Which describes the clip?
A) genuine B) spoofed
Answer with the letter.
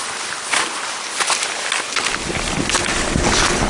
A